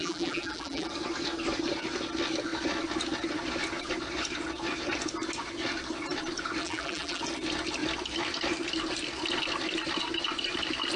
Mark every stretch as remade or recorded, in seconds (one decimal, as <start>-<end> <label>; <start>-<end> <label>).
0.0-0.9 remade; 0.9-6.6 recorded; 6.6-7.2 remade; 7.2-11.0 recorded